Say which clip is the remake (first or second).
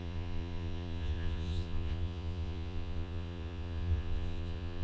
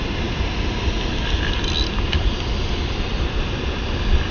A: first